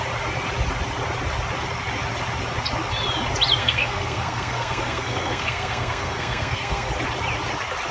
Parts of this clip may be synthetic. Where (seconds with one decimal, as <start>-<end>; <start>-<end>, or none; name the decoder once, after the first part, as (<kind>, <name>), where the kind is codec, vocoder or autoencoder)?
3.6-6.9 (codec, SNAC)